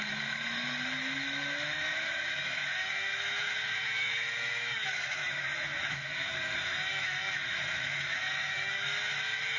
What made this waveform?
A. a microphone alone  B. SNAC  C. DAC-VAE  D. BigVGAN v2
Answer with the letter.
C